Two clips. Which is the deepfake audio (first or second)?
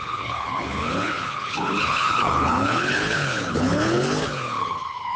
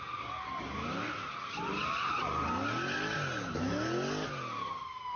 first